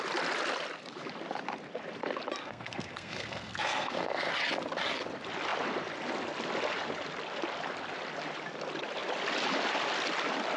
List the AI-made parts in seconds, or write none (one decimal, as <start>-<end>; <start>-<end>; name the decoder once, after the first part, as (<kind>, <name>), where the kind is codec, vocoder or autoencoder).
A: 2.4-4.3 (codec, SNAC)